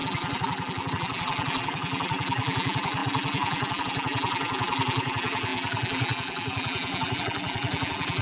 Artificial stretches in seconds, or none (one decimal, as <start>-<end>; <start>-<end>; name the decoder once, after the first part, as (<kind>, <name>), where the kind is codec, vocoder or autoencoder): 0.0-8.2 (vocoder, BigVGAN v2)